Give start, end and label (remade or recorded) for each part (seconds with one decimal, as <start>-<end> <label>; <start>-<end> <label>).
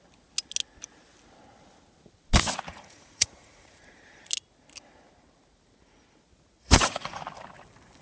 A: 0.0-2.7 recorded; 2.7-4.3 remade; 4.3-6.6 recorded; 6.6-7.2 remade; 7.2-8.0 recorded